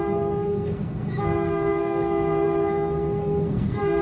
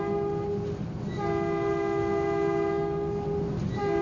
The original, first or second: second